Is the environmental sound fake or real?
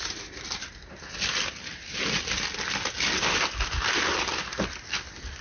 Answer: real